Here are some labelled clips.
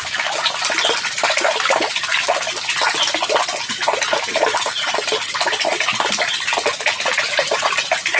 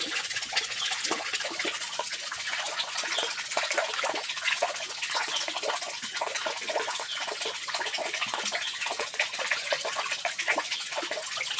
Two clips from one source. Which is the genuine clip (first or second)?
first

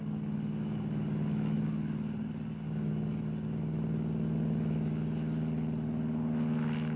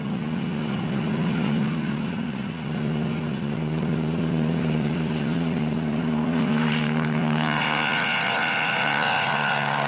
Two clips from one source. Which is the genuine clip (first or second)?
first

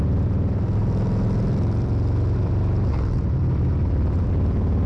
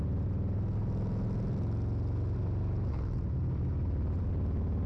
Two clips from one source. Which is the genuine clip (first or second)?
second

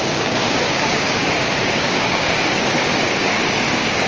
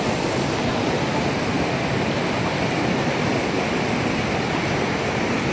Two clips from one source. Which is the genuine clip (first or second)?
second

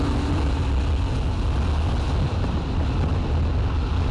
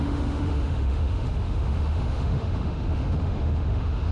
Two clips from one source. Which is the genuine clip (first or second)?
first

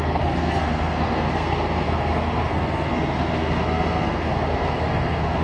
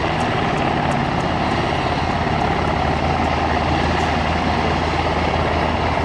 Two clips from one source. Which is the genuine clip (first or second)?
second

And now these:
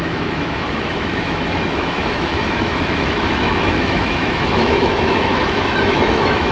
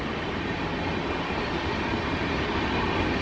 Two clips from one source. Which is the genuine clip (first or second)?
second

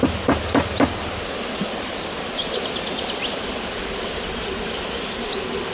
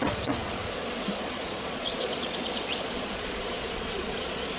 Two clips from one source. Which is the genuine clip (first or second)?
first